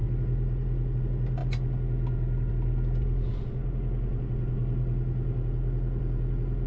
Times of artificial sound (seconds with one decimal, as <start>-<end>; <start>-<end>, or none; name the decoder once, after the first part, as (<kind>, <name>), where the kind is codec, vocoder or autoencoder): none